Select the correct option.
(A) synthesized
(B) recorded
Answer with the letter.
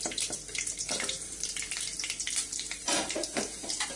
A